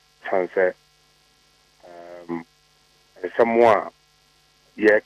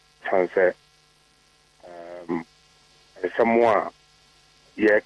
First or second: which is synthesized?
second